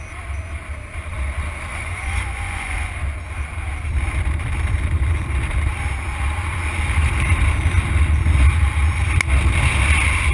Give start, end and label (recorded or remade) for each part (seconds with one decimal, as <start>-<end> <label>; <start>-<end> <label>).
0.0-1.7 recorded; 1.7-2.9 remade; 2.9-10.3 recorded